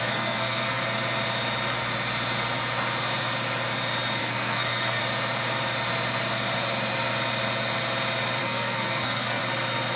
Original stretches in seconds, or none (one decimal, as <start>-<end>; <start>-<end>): 0.8-4.2; 5.0-8.4; 9.4-10.0